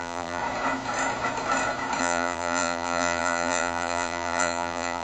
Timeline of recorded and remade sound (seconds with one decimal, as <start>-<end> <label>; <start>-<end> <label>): 0.0-0.4 remade; 0.4-2.0 recorded; 2.0-5.0 remade